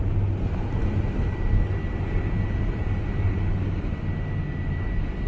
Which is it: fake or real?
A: real